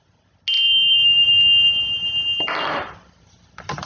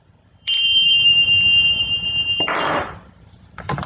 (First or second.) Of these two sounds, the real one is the first